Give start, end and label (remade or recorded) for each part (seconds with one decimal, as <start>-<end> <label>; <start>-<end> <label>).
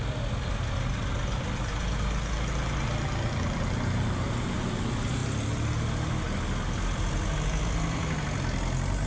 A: 0.0-9.1 recorded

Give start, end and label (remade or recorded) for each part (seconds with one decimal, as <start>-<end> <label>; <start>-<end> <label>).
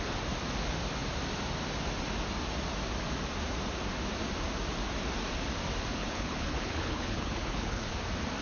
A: 0.0-6.0 recorded; 6.0-7.9 remade; 7.9-8.4 recorded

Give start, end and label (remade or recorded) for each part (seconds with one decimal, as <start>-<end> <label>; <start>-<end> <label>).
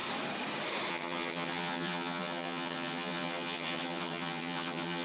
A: 0.0-0.9 recorded; 0.9-5.0 remade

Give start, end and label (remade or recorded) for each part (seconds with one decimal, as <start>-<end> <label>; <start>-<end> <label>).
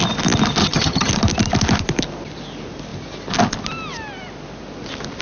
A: 0.0-0.6 recorded; 0.6-1.1 remade; 1.1-5.2 recorded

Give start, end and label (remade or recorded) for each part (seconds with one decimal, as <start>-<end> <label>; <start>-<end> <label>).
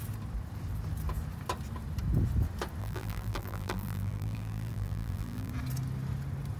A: 0.0-2.8 recorded; 2.8-5.5 remade; 5.5-6.6 recorded